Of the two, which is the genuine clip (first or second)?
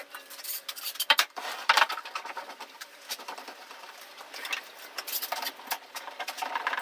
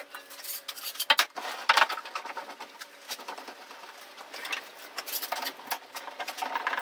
second